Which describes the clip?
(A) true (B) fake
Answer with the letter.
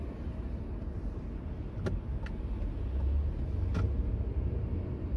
A